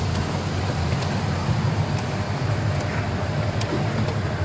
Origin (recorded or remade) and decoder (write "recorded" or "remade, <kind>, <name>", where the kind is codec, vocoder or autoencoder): recorded